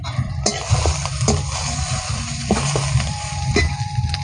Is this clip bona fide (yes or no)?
no